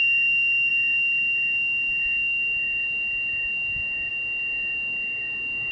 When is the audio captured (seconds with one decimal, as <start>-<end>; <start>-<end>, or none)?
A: 0.0-5.7